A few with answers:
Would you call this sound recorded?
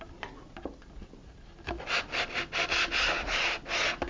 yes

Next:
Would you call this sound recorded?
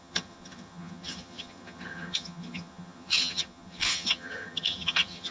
no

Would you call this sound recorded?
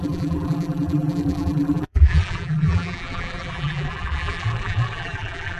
no